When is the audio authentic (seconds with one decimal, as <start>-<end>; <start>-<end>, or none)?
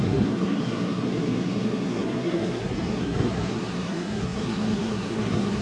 none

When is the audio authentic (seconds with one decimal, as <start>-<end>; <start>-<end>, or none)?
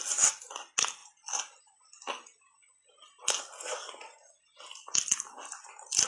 0.0-6.1